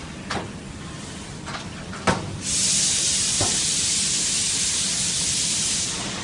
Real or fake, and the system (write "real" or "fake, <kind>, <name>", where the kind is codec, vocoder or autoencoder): real